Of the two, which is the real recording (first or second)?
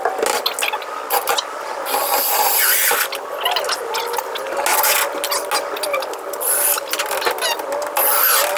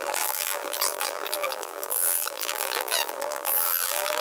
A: first